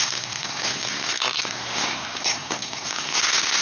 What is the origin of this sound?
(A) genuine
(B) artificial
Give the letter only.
B